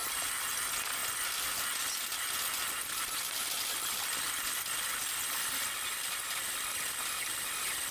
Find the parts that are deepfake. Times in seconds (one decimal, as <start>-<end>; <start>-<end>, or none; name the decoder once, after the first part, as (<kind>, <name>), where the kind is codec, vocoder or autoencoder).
none